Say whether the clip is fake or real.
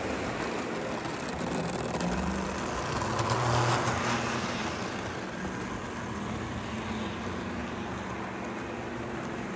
real